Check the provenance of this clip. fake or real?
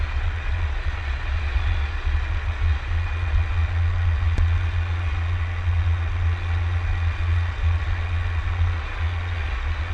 fake